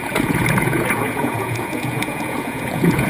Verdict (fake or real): fake